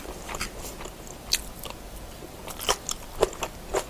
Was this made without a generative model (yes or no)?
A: yes